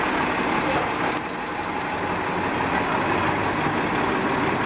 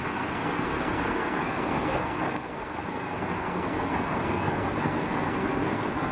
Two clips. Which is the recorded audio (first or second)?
first